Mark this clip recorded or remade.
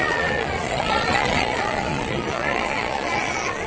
remade